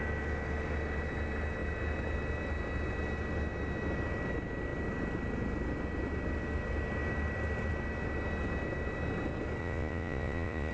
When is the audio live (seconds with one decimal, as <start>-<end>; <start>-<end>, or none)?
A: 0.0-9.6

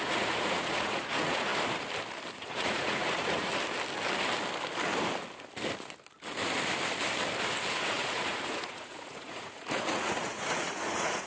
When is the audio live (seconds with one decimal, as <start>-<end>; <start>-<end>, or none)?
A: 1.5-2.3; 3.5-7.7

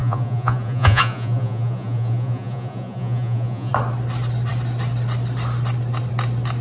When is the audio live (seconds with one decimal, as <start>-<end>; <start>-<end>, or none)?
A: 3.7-6.6

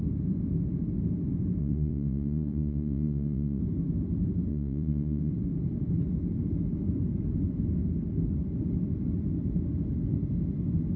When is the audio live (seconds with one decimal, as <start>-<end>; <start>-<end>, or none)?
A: 0.0-1.6; 3.6-4.5; 5.3-11.0

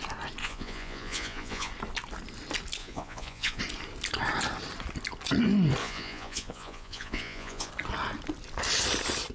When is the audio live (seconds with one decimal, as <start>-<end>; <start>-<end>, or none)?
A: 0.0-0.4; 1.7-2.8; 3.6-5.8; 7.7-9.3

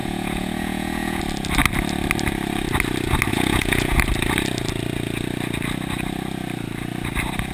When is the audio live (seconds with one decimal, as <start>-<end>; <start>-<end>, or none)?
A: 1.2-3.3; 4.0-7.5